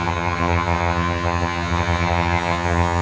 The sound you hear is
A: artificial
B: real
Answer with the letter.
A